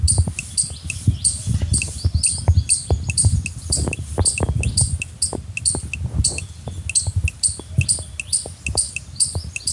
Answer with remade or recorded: recorded